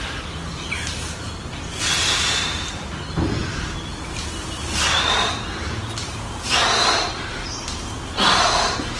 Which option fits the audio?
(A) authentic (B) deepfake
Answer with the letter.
A